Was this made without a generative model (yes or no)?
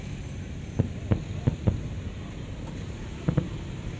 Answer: yes